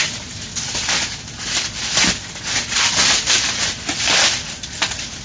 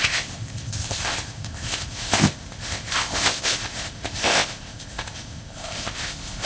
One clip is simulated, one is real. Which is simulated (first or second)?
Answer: second